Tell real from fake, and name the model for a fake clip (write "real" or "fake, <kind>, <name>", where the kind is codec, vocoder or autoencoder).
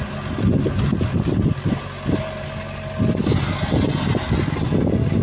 real